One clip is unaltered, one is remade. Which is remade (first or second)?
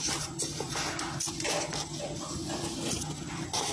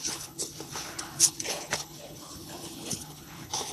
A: second